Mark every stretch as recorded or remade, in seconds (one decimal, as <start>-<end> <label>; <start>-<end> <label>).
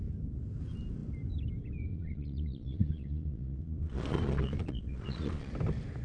0.0-1.9 recorded; 1.9-5.5 remade; 5.5-6.0 recorded